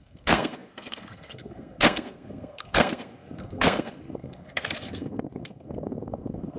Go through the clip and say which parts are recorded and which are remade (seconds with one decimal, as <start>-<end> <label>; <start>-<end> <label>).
0.0-6.6 remade